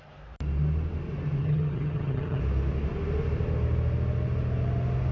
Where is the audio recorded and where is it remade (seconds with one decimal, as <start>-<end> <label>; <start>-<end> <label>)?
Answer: 0.0-1.4 recorded; 1.4-2.4 remade; 2.4-5.1 recorded